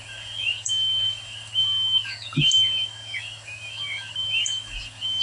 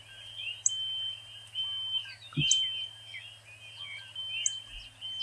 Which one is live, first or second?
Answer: second